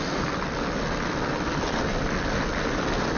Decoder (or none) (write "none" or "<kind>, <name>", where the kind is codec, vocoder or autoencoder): none